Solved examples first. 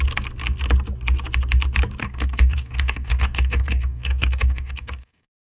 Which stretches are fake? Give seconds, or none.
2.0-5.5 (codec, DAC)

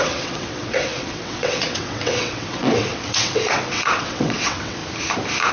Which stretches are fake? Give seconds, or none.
0.0-4.8 (vocoder, WaveNeXt)

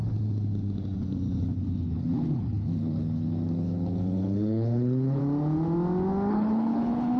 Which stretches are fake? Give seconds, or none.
1.4-5.2 (codec, HILCodec); 6.3-7.2

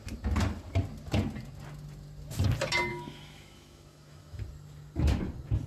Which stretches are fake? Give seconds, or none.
2.9-4.4 (autoencoder, DAC-VAE)

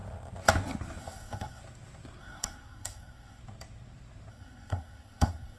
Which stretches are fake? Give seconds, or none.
1.0-1.6 (codec, SNAC); 2.2-3.4; 4.3-5.6

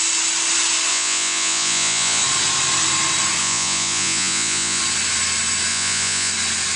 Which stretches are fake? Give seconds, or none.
0.9-2.2 (vocoder, Vocos); 3.4-4.8; 5.7-6.3

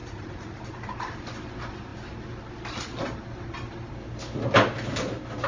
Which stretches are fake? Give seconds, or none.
0.0-0.6 (vocoder, Vocos)

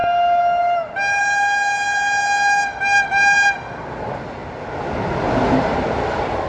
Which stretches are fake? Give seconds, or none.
none